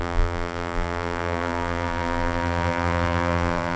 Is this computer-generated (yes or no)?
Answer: yes